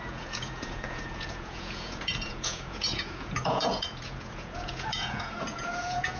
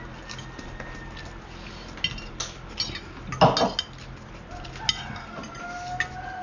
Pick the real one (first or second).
second